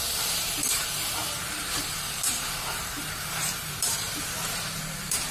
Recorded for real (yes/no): no